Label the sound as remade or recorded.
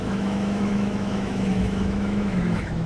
remade